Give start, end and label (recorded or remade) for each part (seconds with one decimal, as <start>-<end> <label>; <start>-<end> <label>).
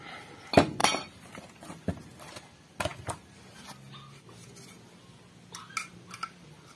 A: 0.0-0.8 recorded; 0.8-1.8 remade; 1.8-6.8 recorded